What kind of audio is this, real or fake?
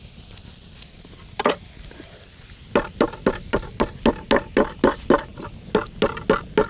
real